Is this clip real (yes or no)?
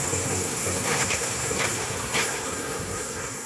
no